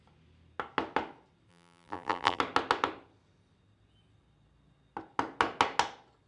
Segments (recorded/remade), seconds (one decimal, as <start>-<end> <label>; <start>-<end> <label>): 0.0-1.5 recorded; 1.5-2.4 remade; 2.4-6.3 recorded